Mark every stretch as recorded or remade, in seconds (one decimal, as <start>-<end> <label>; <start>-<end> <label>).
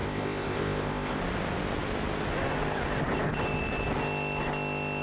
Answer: 0.0-1.2 remade; 1.2-5.0 recorded